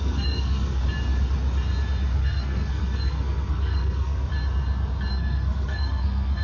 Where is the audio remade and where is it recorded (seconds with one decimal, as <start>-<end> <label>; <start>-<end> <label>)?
0.0-0.8 remade; 0.8-2.2 recorded; 2.2-4.3 remade; 4.3-5.1 recorded; 5.1-6.4 remade